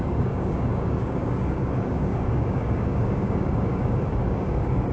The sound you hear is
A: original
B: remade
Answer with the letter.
B